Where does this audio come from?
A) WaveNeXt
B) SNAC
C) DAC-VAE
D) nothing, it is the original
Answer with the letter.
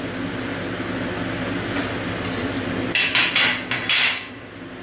D